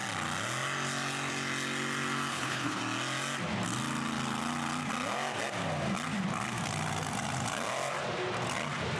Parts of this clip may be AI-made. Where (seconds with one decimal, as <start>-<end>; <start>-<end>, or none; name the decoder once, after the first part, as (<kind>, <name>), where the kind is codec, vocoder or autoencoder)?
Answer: 2.3-2.8 (codec, HILCodec)